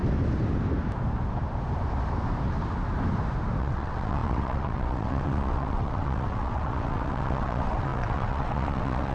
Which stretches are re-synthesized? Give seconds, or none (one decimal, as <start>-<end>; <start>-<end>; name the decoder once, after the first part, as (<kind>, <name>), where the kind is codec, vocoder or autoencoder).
3.6-9.1 (vocoder, WaveNeXt)